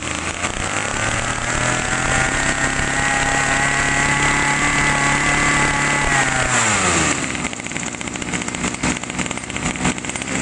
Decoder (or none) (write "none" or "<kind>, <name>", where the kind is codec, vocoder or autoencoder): none